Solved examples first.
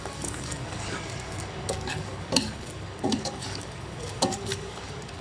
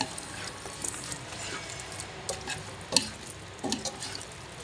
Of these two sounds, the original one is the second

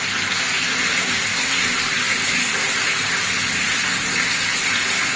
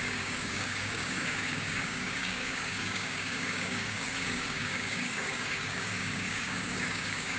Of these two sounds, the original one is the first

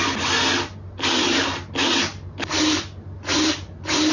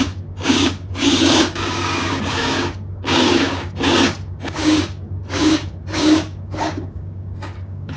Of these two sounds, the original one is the first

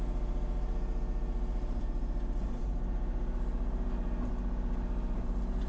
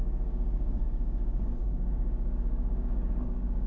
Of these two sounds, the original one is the first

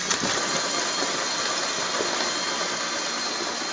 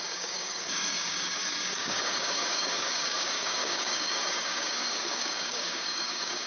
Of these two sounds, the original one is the first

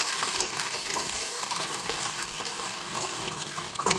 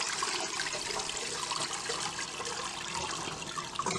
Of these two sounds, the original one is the second